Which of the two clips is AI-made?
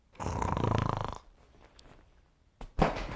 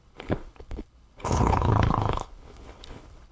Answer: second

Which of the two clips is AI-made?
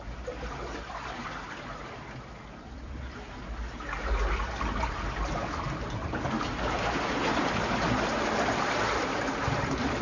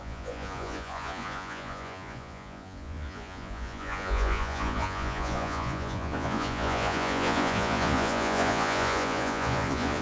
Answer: second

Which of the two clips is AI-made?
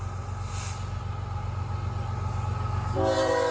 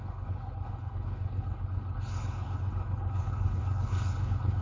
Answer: second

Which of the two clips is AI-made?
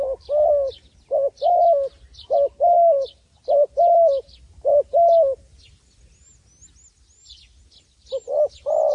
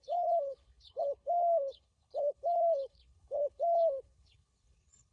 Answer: second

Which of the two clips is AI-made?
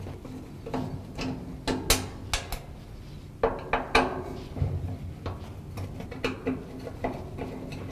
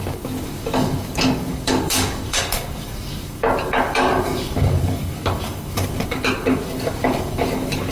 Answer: second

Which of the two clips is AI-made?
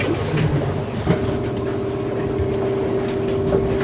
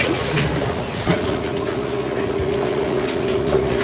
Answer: second